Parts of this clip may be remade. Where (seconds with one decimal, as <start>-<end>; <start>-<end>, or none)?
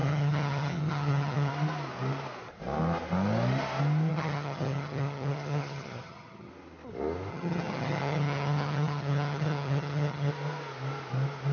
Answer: 0.0-1.5; 4.1-6.5; 7.3-10.3